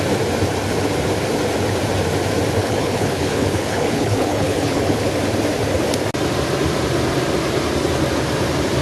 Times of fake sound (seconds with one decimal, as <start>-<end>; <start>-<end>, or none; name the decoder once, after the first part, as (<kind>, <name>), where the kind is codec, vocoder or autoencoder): 2.6-5.1 (codec, HILCodec)